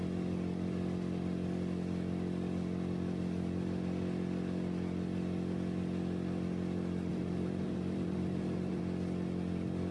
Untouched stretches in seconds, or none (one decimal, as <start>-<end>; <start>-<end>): 0.0-7.1; 8.8-9.9